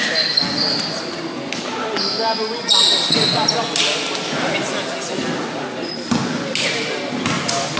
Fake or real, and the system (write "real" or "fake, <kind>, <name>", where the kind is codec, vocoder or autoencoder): real